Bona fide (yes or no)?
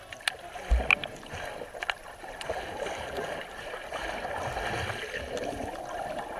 yes